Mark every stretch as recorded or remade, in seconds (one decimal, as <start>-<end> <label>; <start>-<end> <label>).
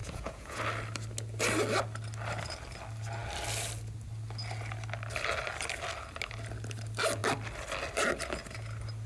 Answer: 0.0-0.6 remade; 0.6-9.1 recorded